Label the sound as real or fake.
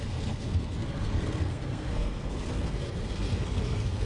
fake